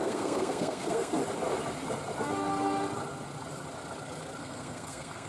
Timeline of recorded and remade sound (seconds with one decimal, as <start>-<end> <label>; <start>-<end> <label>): 0.0-1.2 remade; 1.2-4.4 recorded; 4.4-5.3 remade